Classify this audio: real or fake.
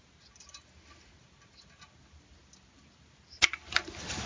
real